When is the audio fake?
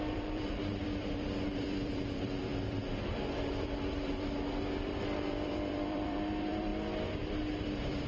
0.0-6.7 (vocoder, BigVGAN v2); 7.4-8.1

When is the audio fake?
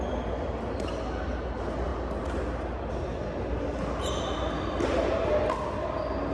none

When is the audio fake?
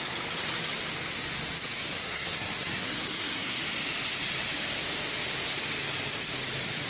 1.9-3.6 (codec, SNAC)